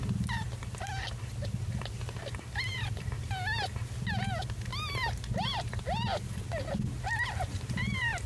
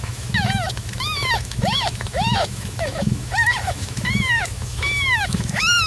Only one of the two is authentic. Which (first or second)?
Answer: first